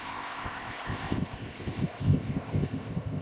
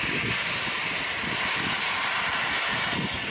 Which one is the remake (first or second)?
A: first